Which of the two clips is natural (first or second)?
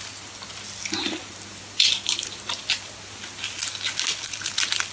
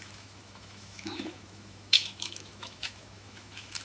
first